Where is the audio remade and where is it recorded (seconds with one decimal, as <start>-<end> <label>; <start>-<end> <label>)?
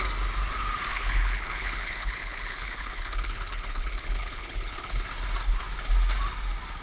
0.0-0.9 recorded; 0.9-5.0 remade; 5.0-6.8 recorded